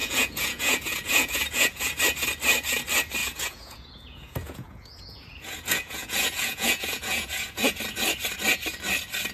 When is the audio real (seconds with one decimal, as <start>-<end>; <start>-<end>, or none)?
2.0-3.2; 7.8-9.3